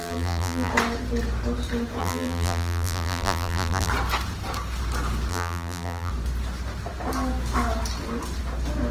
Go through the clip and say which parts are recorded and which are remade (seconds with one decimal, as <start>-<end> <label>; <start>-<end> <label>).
0.0-0.7 remade; 0.7-2.0 recorded; 2.0-3.9 remade; 3.9-5.3 recorded; 5.3-6.1 remade; 6.1-8.9 recorded